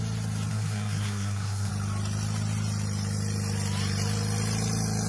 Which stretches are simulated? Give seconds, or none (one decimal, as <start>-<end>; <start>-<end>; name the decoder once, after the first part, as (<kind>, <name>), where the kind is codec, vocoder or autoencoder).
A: 0.5-1.7 (codec, SNAC)